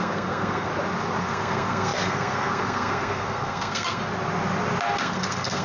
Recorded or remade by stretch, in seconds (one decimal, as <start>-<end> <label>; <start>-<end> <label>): 0.0-0.7 remade; 0.7-1.2 recorded; 1.2-4.0 remade; 4.0-5.0 recorded; 5.0-5.6 remade